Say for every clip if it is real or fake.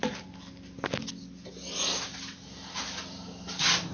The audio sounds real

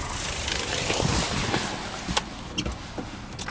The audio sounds real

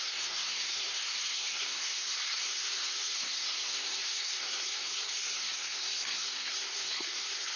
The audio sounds fake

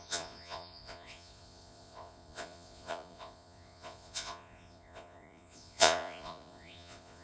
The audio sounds fake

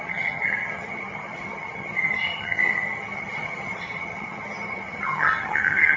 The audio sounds fake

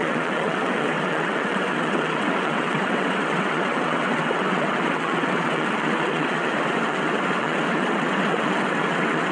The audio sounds fake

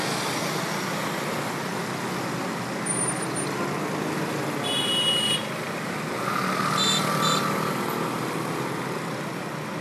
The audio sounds real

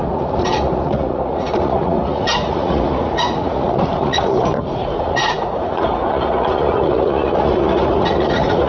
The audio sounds fake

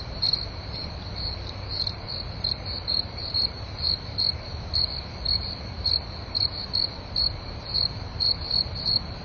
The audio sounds fake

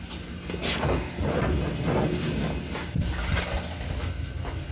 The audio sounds real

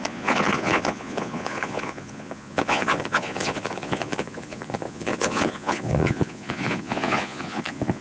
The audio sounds fake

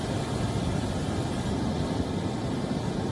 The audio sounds real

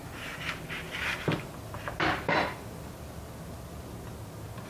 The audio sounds real